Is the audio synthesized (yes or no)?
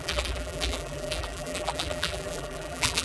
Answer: yes